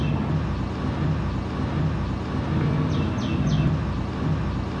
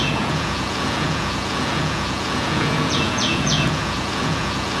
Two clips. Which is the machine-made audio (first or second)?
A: second